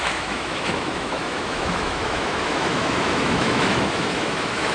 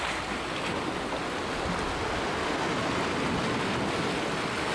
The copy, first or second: first